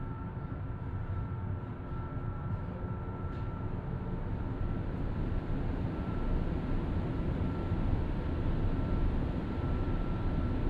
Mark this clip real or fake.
fake